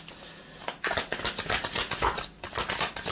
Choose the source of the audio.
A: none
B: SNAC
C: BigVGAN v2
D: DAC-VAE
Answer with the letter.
A